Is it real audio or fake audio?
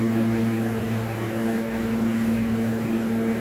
fake